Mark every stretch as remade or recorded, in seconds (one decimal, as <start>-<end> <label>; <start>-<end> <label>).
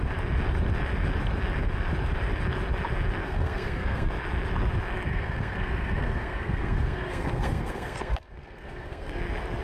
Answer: 0.0-3.2 recorded; 3.2-4.1 remade; 4.1-5.1 recorded; 5.1-9.2 remade; 9.2-9.6 recorded